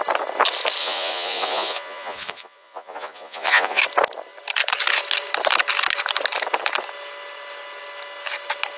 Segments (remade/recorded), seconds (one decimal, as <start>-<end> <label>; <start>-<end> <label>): 0.0-0.8 recorded; 0.8-3.8 remade; 3.8-8.8 recorded